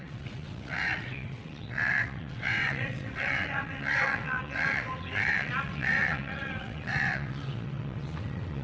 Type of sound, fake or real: fake